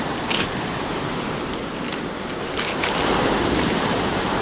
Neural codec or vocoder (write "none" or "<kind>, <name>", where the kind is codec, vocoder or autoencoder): vocoder, BigVGAN v2